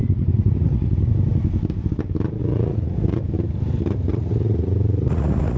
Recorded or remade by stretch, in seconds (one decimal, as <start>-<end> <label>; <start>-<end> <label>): 0.0-1.1 remade; 1.1-2.4 recorded; 2.4-3.2 remade; 3.2-4.1 recorded; 4.1-5.6 remade